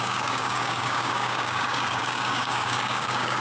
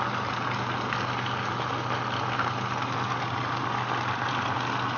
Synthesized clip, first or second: first